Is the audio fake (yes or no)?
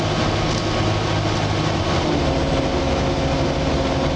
no